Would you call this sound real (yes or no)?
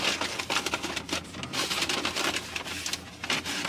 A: yes